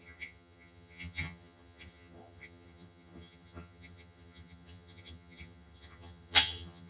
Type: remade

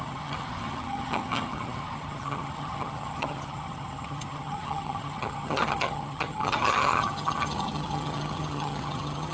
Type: remade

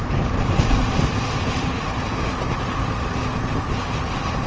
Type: recorded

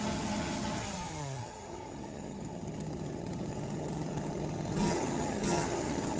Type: remade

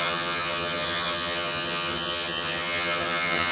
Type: remade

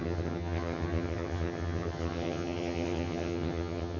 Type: remade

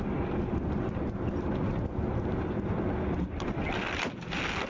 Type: recorded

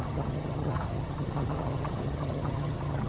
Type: remade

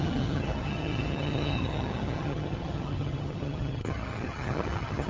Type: remade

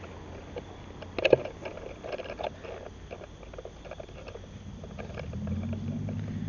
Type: recorded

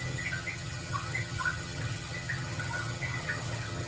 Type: remade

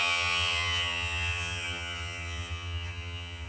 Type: remade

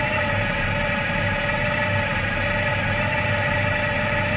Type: recorded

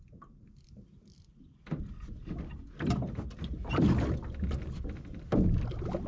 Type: recorded